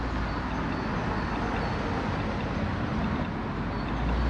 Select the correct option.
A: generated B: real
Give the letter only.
B